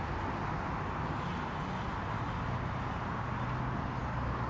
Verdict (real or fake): real